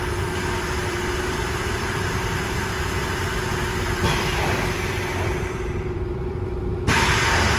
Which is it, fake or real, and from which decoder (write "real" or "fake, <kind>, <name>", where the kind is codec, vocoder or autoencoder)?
fake, vocoder, BigVGAN v2